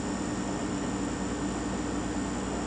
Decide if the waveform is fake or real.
real